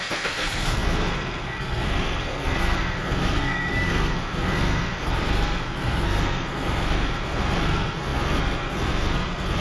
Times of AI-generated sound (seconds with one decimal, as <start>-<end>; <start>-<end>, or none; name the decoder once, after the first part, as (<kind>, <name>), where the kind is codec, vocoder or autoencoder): 0.0-9.6 (codec, SNAC)